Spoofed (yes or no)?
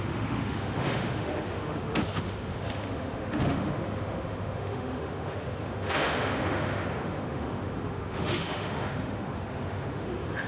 yes